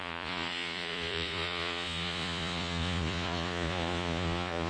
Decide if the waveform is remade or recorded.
remade